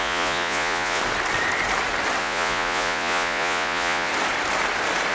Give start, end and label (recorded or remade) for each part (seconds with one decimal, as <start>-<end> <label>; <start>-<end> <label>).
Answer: 0.0-1.0 remade; 1.0-2.2 recorded; 2.2-4.1 remade; 4.1-5.1 recorded